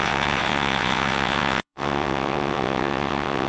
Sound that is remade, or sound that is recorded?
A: remade